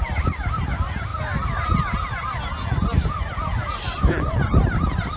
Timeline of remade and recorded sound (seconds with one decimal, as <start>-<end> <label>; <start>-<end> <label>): 0.0-1.1 remade; 1.1-4.1 recorded; 4.1-5.2 remade